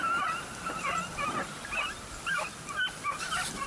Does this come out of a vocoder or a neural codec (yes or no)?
no